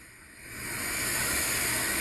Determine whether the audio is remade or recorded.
recorded